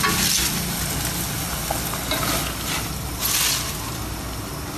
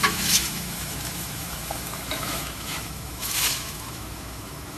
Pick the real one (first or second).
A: first